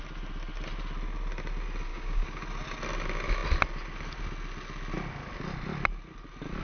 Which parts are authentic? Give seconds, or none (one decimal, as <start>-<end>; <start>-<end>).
0.0-1.9; 2.4-6.6